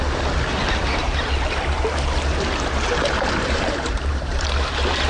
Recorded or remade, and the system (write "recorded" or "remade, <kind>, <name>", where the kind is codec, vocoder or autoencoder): remade, vocoder, BigVGAN v2